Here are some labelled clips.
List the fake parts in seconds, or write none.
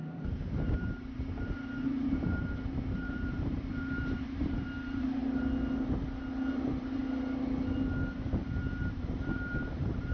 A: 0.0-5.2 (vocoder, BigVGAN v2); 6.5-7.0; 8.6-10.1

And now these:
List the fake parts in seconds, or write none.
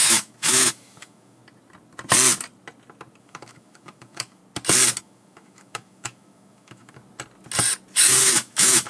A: 0.0-1.4 (autoencoder, DAC-VAE); 3.2-4.4; 5.0-7.0; 8.0-8.9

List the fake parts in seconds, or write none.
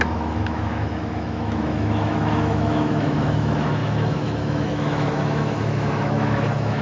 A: 0.0-6.8 (autoencoder, DAC-VAE)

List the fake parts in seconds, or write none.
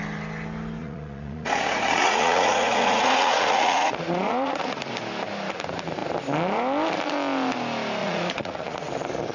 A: 0.8-4.9 (vocoder, Vocos); 8.0-8.9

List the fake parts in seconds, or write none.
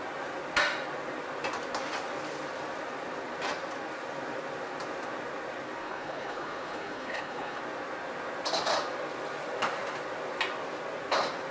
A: 5.8-7.6 (codec, HILCodec)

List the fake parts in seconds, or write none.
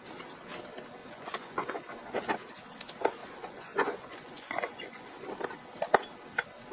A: 1.0-1.9 (vocoder, Vocos); 3.2-5.1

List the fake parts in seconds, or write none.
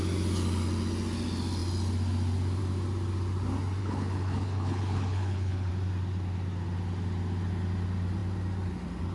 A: 3.8-5.7 (codec, HILCodec)